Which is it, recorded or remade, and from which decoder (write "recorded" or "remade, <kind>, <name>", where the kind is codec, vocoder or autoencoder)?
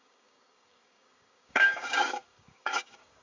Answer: remade, codec, DAC